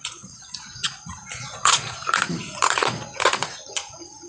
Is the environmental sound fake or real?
fake